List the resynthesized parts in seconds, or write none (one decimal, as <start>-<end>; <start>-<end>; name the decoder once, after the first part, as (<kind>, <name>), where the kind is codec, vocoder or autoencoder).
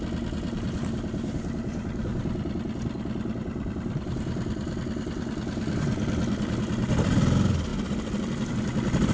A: none